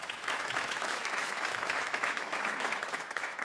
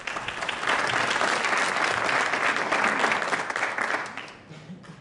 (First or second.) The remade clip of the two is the first